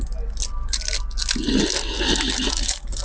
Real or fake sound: real